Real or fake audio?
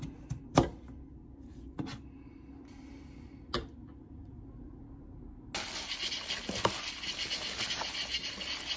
real